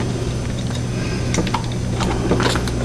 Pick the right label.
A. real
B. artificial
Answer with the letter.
A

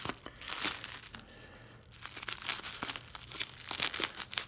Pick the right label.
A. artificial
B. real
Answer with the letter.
B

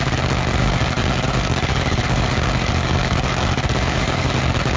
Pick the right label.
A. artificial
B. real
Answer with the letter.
A